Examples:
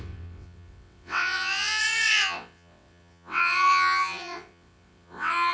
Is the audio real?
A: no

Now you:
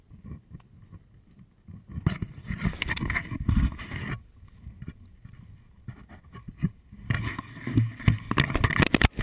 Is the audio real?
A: yes